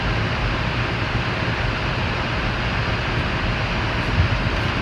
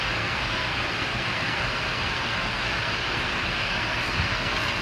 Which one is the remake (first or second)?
second